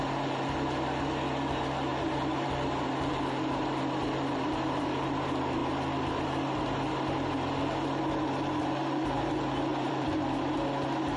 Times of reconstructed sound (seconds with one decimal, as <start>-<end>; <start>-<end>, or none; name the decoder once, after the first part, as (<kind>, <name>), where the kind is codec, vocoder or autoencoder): 1.9-2.5 (vocoder, BigVGAN v2); 9.7-10.4